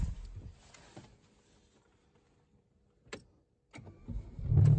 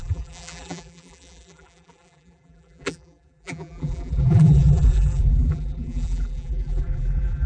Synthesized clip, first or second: second